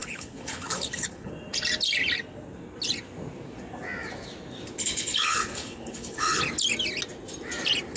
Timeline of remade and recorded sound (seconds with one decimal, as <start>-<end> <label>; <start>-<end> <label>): 0.0-1.3 remade; 1.3-4.8 recorded; 4.8-6.4 remade; 6.4-8.0 recorded